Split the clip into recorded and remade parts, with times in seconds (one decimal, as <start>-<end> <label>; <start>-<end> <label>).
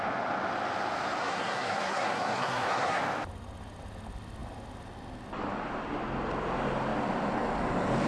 0.0-1.2 recorded; 1.2-3.0 remade; 3.0-8.1 recorded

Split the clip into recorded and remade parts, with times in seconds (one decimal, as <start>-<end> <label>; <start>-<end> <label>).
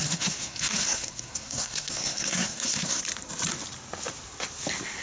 0.0-3.0 remade; 3.0-5.0 recorded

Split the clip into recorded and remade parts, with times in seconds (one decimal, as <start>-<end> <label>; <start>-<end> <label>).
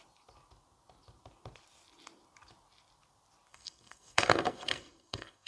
0.0-3.5 recorded; 3.5-5.5 remade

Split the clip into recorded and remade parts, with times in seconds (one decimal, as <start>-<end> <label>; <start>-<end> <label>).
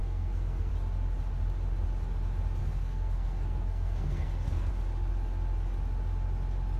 0.0-0.7 remade; 0.7-2.6 recorded; 2.6-4.7 remade; 4.7-6.8 recorded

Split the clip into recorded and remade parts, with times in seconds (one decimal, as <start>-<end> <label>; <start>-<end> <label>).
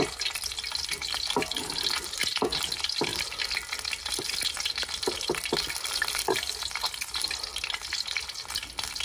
0.0-9.0 recorded